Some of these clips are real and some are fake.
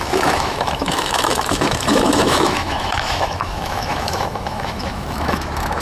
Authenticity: fake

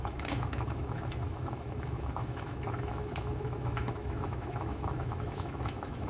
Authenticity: fake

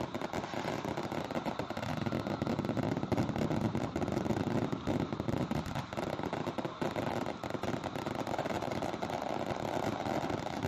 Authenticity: fake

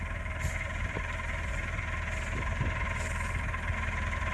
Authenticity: real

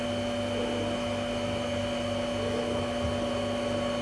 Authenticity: real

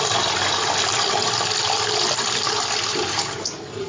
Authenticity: real